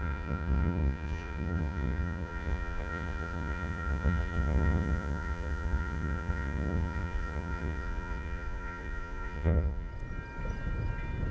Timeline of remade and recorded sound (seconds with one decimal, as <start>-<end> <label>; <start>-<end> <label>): 0.0-9.9 remade; 9.9-11.3 recorded